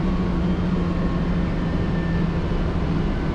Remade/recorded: recorded